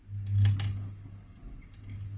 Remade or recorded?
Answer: recorded